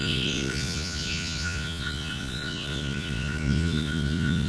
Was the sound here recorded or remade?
remade